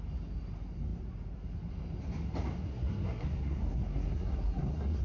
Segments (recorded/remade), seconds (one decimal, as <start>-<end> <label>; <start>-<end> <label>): 0.0-2.7 recorded; 2.7-5.0 remade